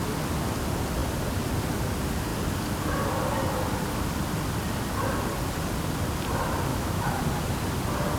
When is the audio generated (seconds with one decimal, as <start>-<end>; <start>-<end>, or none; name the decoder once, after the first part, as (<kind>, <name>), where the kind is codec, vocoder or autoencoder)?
6.7-7.2 (autoencoder, DAC-VAE)